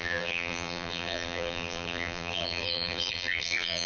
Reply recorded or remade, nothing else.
remade